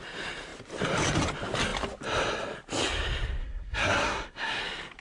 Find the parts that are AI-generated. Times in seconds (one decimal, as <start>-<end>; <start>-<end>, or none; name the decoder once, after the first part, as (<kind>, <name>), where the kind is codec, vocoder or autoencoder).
3.4-4.6 (codec, SNAC)